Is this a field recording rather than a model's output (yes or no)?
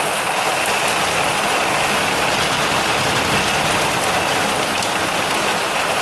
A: yes